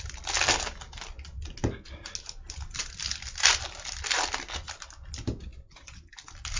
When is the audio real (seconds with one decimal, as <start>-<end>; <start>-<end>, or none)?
0.0-6.6